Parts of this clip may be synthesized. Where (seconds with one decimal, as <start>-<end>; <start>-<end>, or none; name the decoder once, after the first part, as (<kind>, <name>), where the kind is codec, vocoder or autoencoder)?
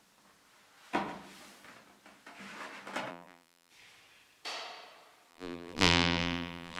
3.1-3.7 (vocoder, BigVGAN v2); 5.3-6.8